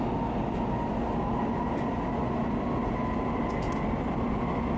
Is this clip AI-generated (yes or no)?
no